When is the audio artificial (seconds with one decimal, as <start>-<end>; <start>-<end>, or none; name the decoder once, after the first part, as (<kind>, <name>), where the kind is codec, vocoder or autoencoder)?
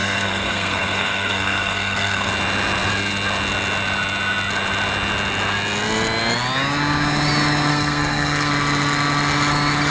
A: 0.0-2.3 (codec, SNAC); 7.7-8.5